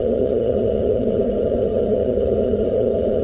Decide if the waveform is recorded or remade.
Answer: remade